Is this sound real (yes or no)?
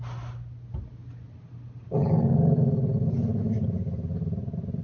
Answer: yes